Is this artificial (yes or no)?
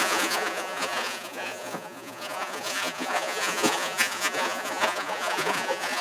yes